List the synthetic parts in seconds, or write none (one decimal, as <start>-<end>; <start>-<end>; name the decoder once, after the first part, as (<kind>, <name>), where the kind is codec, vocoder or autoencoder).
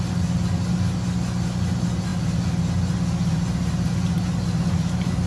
none